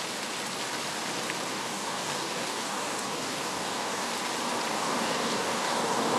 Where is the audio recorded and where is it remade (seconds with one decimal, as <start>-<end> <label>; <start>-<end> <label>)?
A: 0.0-1.5 recorded; 1.5-4.1 remade; 4.1-4.7 recorded; 4.7-6.2 remade